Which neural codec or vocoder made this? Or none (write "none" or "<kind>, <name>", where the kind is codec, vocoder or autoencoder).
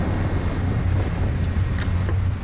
none